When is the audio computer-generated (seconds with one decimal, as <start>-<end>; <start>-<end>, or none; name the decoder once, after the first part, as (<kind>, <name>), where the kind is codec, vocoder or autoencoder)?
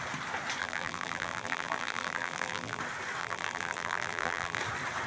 0.6-2.8 (vocoder, BigVGAN v2); 3.2-4.6